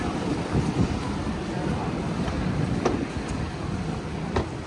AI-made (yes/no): no